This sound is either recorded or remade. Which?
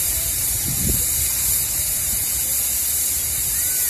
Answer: remade